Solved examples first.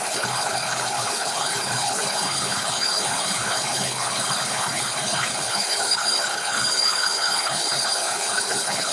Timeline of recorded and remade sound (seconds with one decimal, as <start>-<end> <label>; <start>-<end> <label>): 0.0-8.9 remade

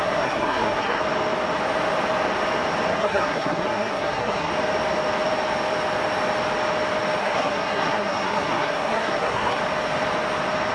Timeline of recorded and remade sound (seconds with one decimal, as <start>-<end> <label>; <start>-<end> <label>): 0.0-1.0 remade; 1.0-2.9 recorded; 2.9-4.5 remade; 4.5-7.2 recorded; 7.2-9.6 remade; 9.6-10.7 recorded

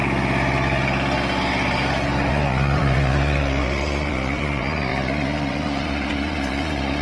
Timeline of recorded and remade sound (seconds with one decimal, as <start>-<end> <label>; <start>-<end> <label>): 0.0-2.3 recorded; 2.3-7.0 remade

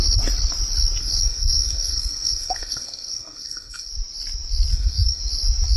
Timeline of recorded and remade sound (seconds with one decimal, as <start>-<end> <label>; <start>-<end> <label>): 0.0-1.0 recorded; 1.0-3.9 remade; 3.9-4.7 recorded; 4.7-5.2 remade; 5.2-5.8 recorded

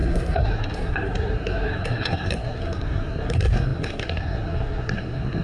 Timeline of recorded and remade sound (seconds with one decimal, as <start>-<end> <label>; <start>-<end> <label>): 0.0-5.4 remade